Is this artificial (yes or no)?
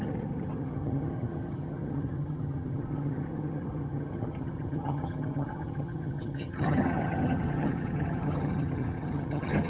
yes